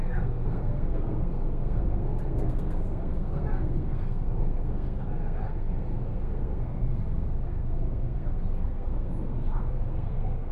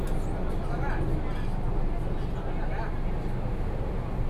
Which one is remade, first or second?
first